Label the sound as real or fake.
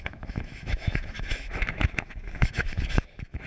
fake